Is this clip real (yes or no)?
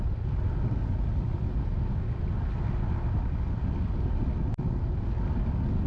yes